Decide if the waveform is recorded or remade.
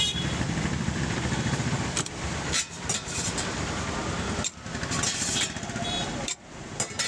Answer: remade